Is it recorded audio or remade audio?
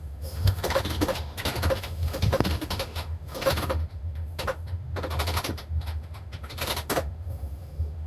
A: remade